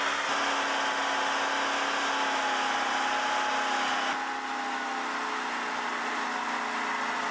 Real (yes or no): yes